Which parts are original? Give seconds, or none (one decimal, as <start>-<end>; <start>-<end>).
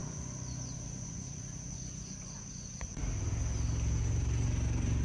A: 3.0-5.0